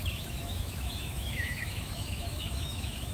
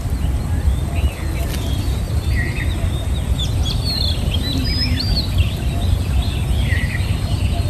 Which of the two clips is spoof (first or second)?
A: first